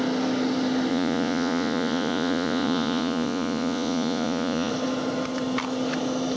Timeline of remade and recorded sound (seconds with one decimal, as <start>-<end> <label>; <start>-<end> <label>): 0.0-0.9 recorded; 0.9-4.7 remade; 4.7-6.4 recorded